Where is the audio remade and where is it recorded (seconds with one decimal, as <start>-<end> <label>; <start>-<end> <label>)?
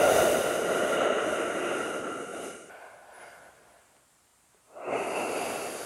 0.0-2.3 recorded; 2.3-3.2 remade; 3.2-4.3 recorded; 4.3-5.9 remade